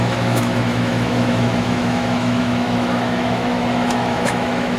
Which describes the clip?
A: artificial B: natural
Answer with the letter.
A